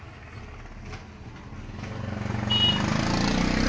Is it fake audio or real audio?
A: real